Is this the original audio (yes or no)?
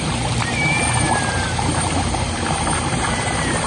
no